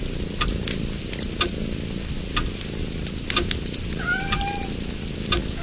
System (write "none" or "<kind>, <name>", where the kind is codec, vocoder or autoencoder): none